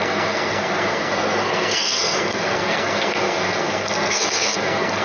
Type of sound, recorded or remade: remade